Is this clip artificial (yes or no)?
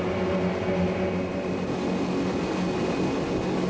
no